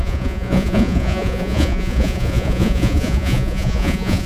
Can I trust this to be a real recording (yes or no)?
no